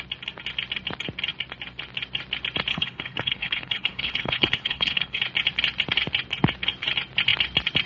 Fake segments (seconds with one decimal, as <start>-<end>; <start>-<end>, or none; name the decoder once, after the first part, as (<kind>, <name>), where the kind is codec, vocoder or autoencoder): 2.7-5.2 (codec, HILCodec)